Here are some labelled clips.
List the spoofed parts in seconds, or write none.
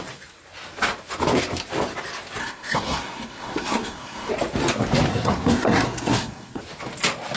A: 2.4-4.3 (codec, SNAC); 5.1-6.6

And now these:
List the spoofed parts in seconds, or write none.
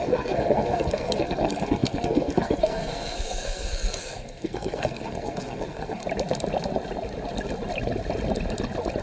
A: 0.0-6.0 (codec, SNAC)